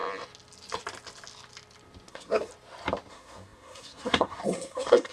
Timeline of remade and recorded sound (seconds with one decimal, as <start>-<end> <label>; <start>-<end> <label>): 0.0-2.1 recorded; 2.1-2.5 remade; 2.5-3.1 recorded; 3.1-5.1 remade